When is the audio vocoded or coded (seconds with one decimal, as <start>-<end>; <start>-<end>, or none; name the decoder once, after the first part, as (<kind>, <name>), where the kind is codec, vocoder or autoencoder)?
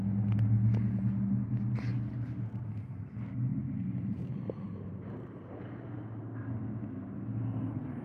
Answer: 1.9-3.1 (vocoder, BigVGAN v2); 3.5-6.5